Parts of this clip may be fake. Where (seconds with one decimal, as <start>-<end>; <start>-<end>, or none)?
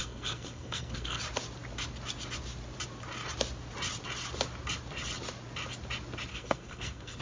0.0-1.2; 6.3-7.2